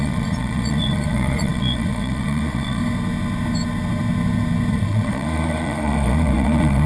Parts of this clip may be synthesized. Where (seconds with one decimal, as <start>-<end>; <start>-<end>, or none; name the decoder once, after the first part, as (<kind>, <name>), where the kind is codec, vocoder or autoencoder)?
0.0-2.8 (vocoder, Vocos); 4.7-6.9